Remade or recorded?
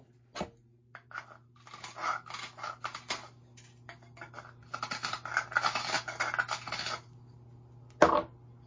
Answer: recorded